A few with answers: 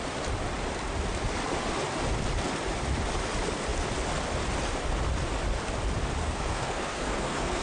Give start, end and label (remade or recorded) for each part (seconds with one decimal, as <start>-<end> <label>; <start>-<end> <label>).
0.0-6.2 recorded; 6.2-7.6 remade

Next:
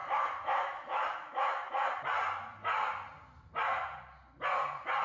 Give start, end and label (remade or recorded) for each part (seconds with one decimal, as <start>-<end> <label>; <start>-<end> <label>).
0.0-1.7 remade; 1.7-5.0 recorded

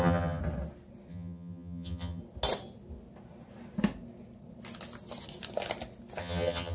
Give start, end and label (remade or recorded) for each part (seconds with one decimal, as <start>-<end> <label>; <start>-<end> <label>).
0.0-0.4 remade; 0.4-1.1 recorded; 1.1-2.2 remade; 2.2-6.2 recorded; 6.2-6.7 remade